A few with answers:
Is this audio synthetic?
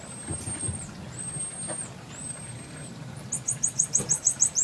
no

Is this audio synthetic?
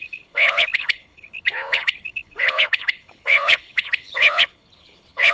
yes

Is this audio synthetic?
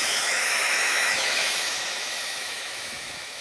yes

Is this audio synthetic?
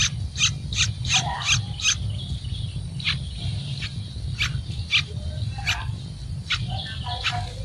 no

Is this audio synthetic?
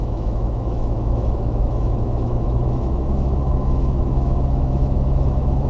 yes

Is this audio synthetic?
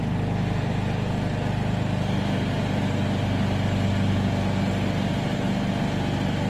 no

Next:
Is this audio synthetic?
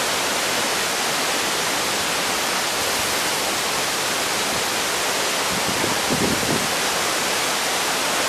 no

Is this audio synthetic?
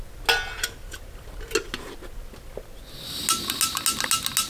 no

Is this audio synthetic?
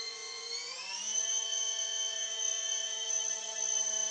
yes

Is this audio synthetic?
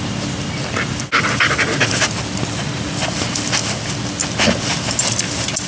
no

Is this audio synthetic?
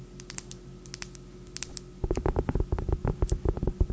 no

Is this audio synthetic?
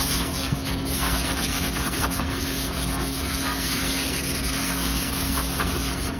yes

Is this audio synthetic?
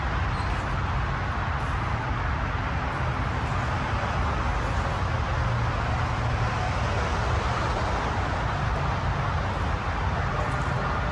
no